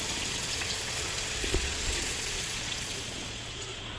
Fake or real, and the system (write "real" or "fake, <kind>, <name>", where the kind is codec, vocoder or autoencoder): fake, vocoder, Vocos